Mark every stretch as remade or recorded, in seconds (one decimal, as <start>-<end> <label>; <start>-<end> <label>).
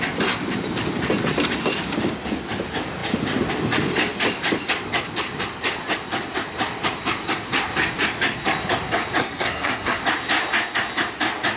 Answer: 0.0-9.2 recorded; 9.2-10.0 remade; 10.0-11.6 recorded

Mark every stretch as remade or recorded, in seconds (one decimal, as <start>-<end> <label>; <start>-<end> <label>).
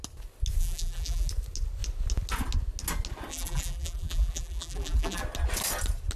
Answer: 0.0-0.6 recorded; 0.6-1.3 remade; 1.3-3.3 recorded; 3.3-5.2 remade; 5.2-6.2 recorded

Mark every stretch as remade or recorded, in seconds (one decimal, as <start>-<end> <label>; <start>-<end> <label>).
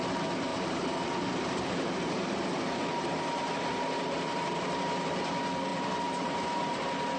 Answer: 0.0-0.5 recorded; 0.5-4.6 remade; 4.6-5.7 recorded; 5.7-6.8 remade; 6.8-7.2 recorded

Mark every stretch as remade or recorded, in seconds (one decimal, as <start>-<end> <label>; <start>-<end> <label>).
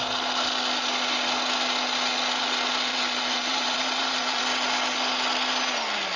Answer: 0.0-2.9 recorded; 2.9-4.4 remade; 4.4-6.2 recorded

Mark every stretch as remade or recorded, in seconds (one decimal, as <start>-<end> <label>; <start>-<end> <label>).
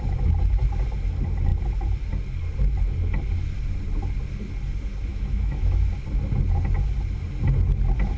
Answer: 0.0-5.1 recorded; 5.1-5.9 remade; 5.9-8.2 recorded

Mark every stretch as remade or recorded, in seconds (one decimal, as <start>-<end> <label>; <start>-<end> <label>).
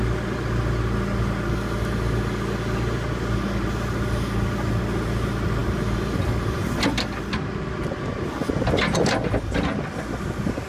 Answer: 0.0-10.7 recorded